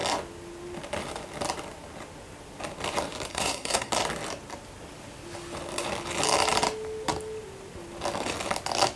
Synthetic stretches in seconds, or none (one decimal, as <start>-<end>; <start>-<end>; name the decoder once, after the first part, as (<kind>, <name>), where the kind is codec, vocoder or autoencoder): 3.3-3.9 (codec, SNAC)